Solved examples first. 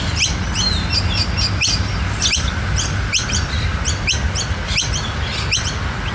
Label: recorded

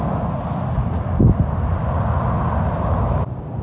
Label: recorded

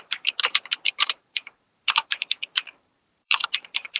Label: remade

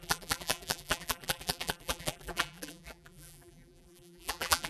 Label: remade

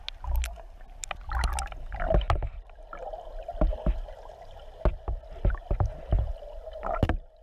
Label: recorded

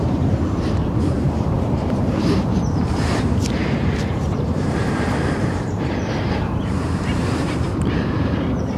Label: remade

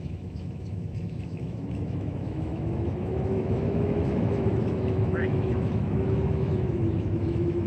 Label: remade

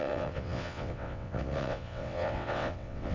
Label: remade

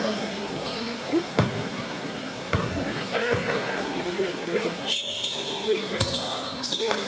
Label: remade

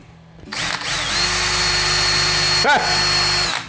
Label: recorded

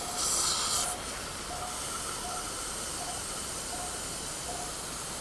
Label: recorded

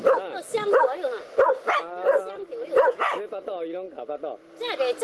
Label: recorded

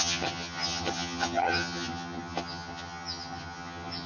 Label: remade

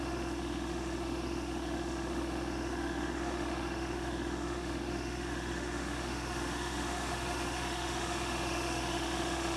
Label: remade